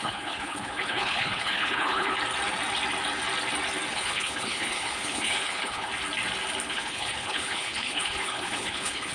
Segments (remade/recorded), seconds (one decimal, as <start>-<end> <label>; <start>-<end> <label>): 0.0-2.1 remade; 2.1-3.9 recorded; 3.9-5.9 remade; 5.9-6.7 recorded; 6.7-9.1 remade